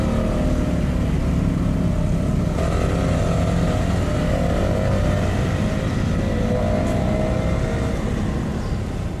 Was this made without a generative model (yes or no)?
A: yes